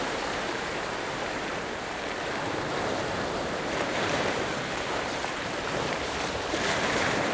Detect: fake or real fake